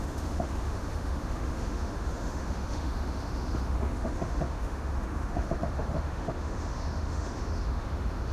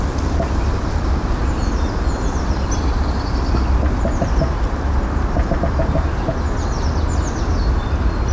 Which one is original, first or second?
second